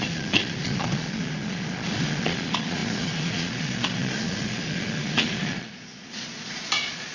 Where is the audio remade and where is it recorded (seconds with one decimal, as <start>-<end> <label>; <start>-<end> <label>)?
0.0-7.1 remade